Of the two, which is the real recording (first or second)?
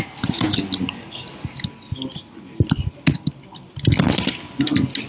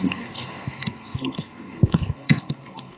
first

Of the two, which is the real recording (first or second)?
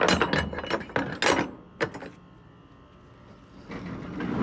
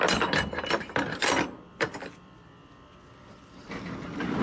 first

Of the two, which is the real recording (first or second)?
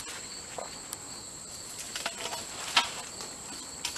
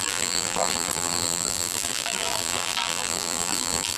first